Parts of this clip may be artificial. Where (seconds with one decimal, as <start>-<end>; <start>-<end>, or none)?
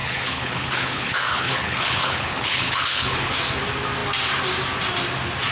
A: 0.0-3.3